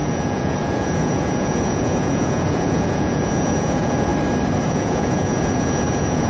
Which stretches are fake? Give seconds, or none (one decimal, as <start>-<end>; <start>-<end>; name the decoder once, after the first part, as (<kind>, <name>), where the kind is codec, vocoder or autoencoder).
0.0-4.1 (vocoder, Vocos); 4.7-6.3